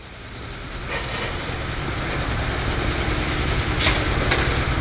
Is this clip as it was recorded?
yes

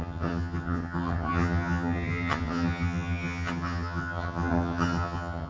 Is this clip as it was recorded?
no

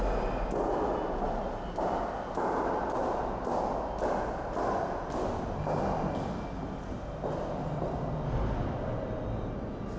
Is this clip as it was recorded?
yes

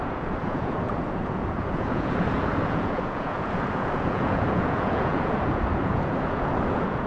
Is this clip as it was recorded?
no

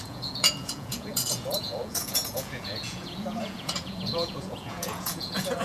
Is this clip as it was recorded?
no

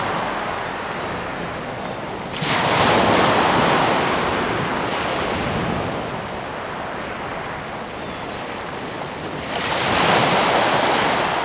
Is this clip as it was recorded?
yes